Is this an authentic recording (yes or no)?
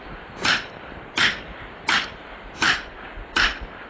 no